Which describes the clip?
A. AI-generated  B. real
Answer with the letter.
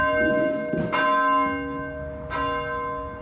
B